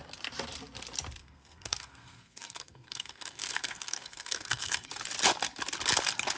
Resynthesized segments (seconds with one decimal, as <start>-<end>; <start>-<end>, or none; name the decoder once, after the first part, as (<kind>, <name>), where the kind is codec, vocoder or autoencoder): 1.2-5.0 (codec, SNAC)